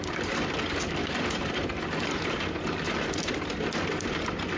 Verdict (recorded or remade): remade